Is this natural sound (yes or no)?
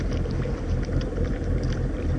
no